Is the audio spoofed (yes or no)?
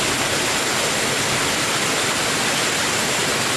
no